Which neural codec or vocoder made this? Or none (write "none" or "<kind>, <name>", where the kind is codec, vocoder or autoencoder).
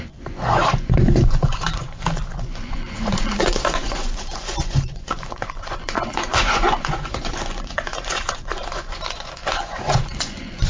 vocoder, Vocos